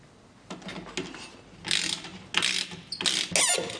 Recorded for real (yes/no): yes